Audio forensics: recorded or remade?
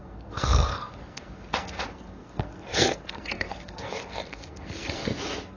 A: remade